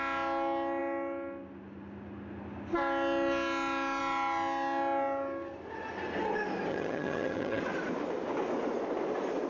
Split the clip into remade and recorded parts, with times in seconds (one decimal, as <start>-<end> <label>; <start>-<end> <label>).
0.0-6.7 recorded; 6.7-7.6 remade; 7.6-9.5 recorded